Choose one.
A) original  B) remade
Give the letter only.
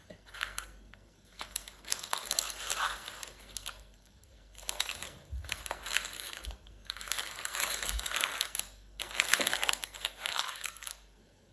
B